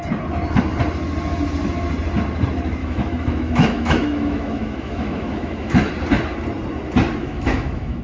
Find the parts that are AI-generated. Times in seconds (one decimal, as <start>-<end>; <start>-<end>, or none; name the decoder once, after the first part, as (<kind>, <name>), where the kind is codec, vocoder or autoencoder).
2.8-5.9 (autoencoder, DAC-VAE); 7.2-8.0